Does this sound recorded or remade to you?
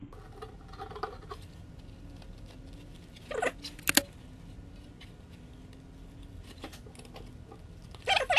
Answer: recorded